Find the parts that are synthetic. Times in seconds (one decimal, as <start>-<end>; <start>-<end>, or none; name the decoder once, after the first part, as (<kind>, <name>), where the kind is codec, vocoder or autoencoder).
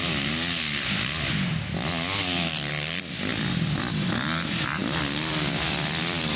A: 1.5-3.3 (vocoder, BigVGAN v2); 3.8-6.4